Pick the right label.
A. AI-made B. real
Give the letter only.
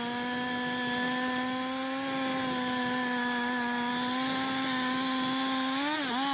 B